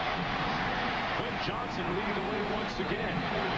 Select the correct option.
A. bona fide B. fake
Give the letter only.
B